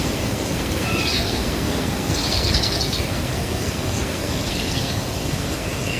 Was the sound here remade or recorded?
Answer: remade